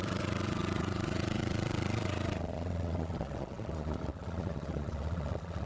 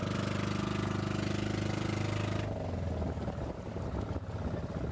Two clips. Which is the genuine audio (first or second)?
second